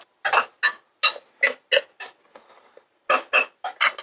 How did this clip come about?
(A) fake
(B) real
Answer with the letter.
B